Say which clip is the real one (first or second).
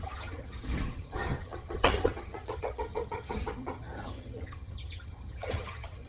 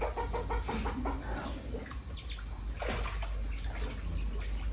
second